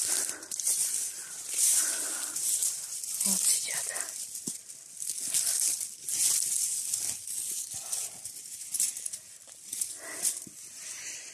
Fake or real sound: real